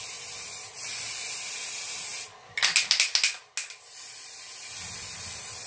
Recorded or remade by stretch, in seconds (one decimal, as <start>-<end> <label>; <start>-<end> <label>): 0.0-5.7 recorded